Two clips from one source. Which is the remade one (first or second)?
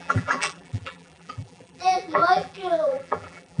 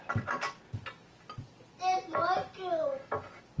first